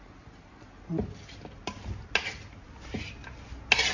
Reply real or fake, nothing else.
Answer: real